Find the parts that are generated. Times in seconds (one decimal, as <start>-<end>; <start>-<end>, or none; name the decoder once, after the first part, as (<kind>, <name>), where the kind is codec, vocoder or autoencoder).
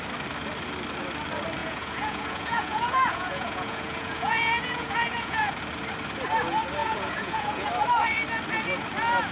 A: 1.6-5.5 (vocoder, Vocos); 6.8-7.7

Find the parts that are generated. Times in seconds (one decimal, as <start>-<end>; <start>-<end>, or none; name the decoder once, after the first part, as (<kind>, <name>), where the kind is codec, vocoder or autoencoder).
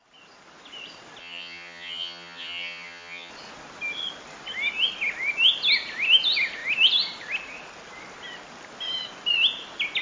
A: 1.2-3.3 (vocoder, HiFi-GAN)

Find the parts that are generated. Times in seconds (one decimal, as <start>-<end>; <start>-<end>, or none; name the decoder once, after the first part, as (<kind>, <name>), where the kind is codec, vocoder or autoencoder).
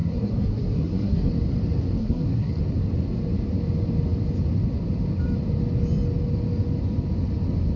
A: 0.0-1.3 (codec, SNAC); 2.0-2.6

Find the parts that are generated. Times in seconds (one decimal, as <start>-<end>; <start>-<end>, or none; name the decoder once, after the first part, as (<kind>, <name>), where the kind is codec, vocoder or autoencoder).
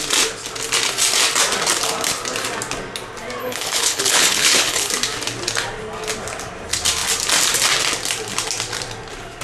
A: 3.4-4.9 (codec, HILCodec)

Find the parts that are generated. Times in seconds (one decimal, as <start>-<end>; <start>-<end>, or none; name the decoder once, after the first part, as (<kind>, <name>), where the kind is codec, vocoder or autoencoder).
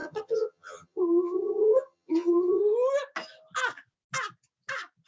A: 0.0-2.6 (vocoder, HiFi-GAN)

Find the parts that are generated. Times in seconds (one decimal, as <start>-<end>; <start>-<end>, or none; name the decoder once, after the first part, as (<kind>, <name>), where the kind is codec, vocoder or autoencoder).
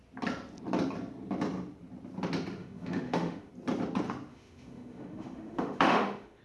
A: 2.6-3.5 (autoencoder, DAC-VAE); 4.3-6.4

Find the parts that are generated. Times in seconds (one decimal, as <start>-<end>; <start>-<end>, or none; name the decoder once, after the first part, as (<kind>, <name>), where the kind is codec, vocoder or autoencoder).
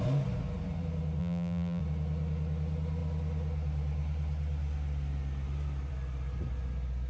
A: 1.2-1.8 (vocoder, BigVGAN v2)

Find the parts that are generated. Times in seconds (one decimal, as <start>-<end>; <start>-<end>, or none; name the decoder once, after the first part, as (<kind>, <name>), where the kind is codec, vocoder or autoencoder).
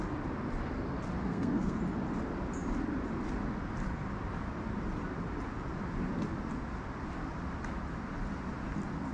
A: 1.2-1.8 (codec, SNAC)